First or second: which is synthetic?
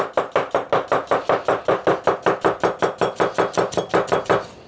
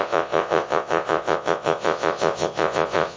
second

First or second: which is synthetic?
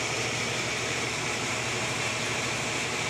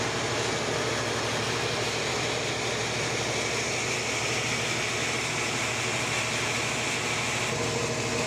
first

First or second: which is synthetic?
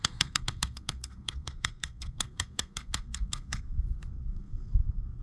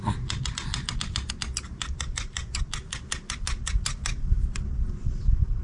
first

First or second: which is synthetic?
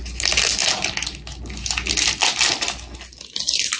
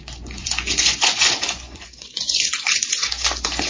second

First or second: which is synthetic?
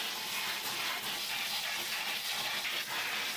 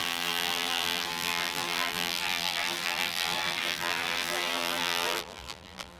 second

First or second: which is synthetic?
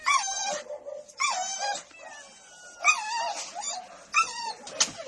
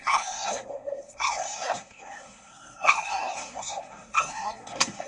second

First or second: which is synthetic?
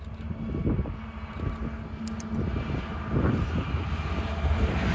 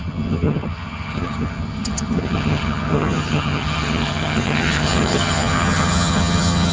second